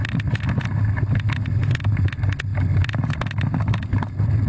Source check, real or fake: real